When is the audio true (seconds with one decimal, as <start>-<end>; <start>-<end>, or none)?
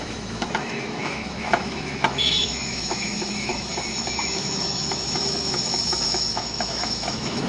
none